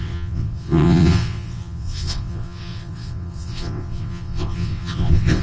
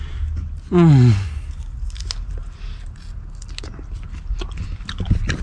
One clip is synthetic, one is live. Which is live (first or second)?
second